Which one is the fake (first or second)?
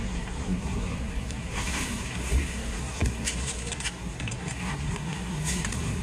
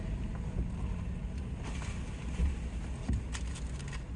first